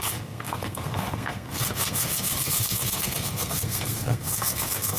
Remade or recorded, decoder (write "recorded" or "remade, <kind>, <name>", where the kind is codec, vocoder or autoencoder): remade, codec, SNAC